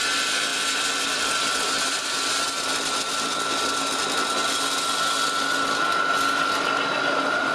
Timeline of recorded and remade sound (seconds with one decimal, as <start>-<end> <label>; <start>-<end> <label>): 0.0-7.5 recorded